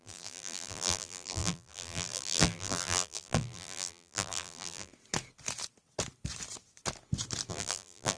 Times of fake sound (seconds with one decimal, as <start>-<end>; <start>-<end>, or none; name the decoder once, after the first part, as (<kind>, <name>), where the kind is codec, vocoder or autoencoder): 0.0-4.9 (vocoder, BigVGAN v2); 7.5-8.2